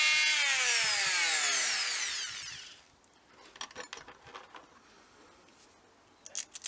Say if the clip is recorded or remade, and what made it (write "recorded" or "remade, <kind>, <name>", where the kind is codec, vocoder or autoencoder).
recorded